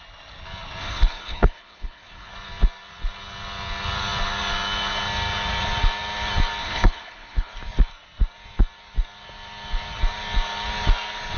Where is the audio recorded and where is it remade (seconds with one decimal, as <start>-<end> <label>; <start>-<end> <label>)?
0.0-0.8 recorded; 0.8-2.3 remade; 2.3-6.6 recorded; 6.6-7.5 remade; 7.5-11.4 recorded